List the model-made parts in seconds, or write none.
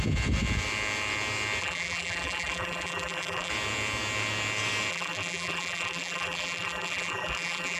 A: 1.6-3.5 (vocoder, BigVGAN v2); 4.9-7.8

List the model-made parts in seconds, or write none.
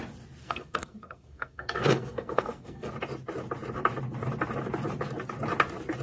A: 0.4-2.9 (codec, SNAC)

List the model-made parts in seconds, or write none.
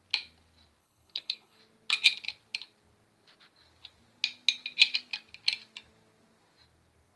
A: 0.8-1.6 (codec, HILCodec)